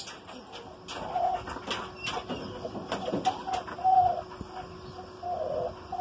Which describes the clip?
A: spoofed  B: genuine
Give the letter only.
B